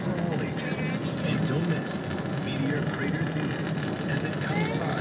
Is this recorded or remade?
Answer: recorded